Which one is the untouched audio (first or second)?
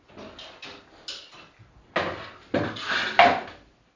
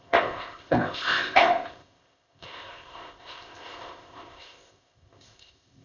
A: first